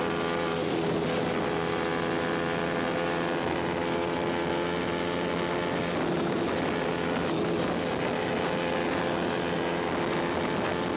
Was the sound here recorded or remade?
recorded